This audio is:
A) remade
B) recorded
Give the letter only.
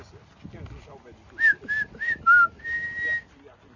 B